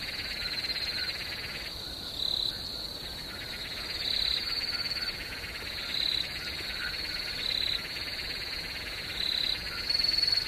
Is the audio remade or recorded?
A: remade